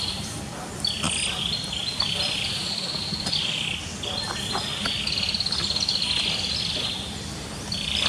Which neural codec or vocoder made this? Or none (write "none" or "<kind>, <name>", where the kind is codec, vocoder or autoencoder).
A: none